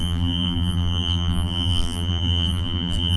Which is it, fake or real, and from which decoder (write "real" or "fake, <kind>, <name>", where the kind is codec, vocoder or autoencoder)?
fake, vocoder, BigVGAN v2